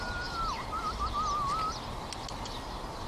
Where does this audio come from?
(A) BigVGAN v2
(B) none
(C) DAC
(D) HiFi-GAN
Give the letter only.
B